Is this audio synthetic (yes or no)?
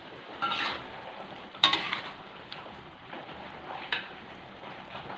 yes